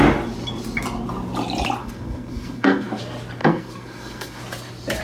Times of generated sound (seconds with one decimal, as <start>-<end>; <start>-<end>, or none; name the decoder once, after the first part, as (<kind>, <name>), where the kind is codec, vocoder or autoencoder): 1.8-3.0 (codec, SNAC); 3.4-4.4